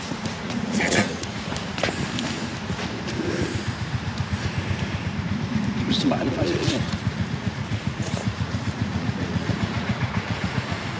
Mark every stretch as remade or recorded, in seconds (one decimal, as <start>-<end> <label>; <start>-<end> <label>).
0.0-1.5 remade; 1.5-5.9 recorded; 5.9-11.0 remade